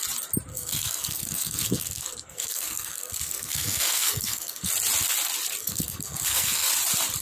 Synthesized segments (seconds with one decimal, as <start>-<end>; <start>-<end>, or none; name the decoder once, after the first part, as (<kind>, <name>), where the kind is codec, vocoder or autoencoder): 0.5-4.7 (codec, SNAC); 5.6-6.7